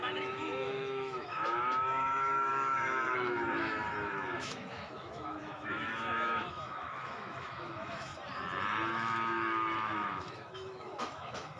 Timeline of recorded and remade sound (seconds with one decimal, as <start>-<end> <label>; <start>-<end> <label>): 0.0-8.1 remade; 8.1-8.9 recorded; 8.9-11.6 remade